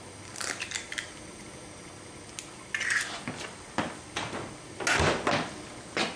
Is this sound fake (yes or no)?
no